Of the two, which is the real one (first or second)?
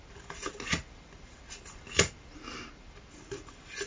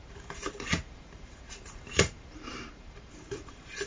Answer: first